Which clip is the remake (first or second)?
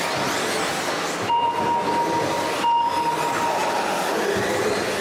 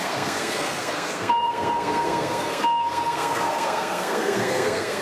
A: second